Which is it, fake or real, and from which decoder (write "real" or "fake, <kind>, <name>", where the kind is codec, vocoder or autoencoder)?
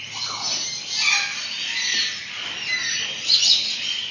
real